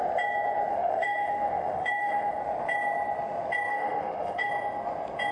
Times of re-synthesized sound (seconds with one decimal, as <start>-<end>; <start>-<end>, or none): 0.7-2.4; 3.7-4.5